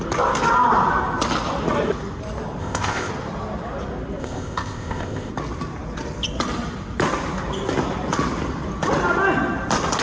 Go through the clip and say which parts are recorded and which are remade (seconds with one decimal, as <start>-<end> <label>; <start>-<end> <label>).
0.0-2.6 recorded; 2.6-3.1 remade; 3.1-4.2 recorded; 4.2-5.3 remade; 5.3-10.0 recorded